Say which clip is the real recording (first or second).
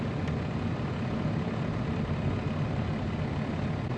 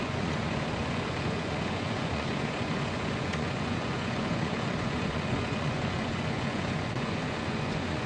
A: first